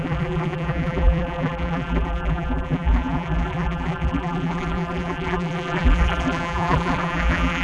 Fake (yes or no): yes